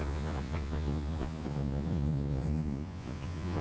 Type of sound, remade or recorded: remade